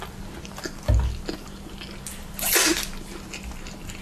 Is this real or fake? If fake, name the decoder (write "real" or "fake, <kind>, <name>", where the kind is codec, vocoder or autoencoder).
real